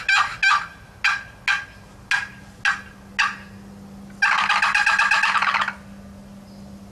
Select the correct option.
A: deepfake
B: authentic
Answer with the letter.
B